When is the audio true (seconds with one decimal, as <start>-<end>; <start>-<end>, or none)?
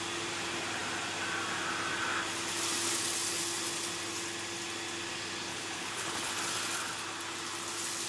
0.0-5.5; 6.3-8.1